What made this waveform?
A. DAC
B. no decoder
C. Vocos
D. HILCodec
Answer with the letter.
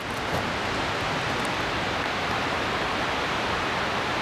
B